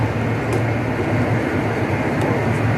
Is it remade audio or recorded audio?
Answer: recorded